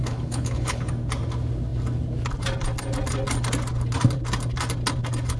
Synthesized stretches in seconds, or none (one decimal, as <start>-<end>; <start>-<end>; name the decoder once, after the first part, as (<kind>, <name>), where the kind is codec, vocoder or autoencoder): 0.0-0.9 (codec, HILCodec)